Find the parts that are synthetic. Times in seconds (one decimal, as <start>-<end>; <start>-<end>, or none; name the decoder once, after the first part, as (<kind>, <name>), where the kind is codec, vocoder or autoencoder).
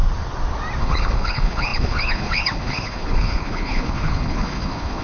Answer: 0.8-5.0 (codec, HILCodec)